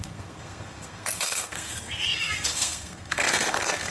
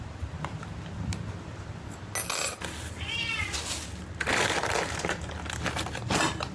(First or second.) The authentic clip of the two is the second